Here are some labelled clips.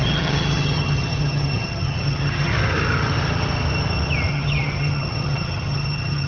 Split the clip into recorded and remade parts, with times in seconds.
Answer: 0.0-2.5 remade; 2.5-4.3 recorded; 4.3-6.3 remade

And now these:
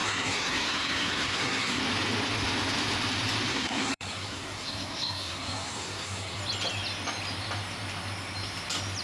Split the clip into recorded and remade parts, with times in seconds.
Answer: 0.0-1.8 remade; 1.8-3.5 recorded; 3.5-6.4 remade; 6.4-9.0 recorded

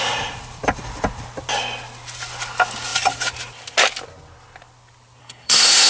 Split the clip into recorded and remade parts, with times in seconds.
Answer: 0.0-5.2 recorded; 5.2-5.9 remade

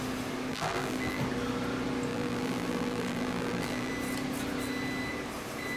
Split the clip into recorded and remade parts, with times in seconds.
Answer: 0.0-0.5 recorded; 0.5-1.2 remade; 1.2-2.1 recorded; 2.1-3.9 remade; 3.9-5.8 recorded

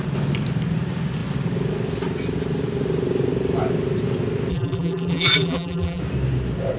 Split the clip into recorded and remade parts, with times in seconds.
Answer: 0.0-4.5 recorded; 4.5-6.0 remade; 6.0-6.8 recorded